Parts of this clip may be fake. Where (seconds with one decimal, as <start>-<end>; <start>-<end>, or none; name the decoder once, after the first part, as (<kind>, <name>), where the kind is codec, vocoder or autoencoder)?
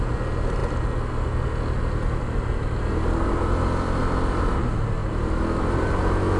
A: 4.0-4.6 (vocoder, BigVGAN v2)